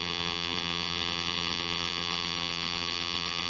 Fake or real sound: fake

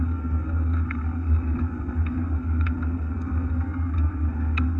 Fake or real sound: fake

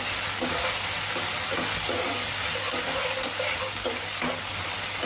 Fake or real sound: real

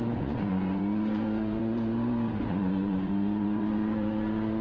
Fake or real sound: fake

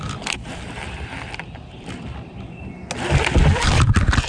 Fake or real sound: real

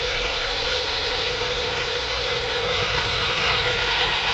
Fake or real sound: fake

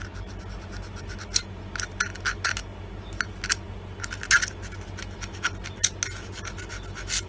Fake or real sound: real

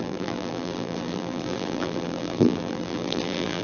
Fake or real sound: fake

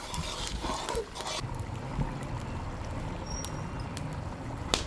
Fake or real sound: real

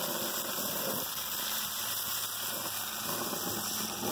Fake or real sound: real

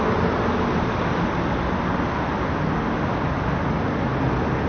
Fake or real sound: real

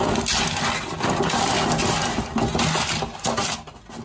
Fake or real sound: real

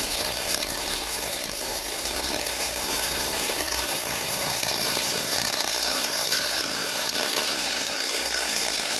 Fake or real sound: fake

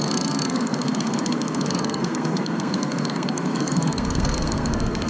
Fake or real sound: fake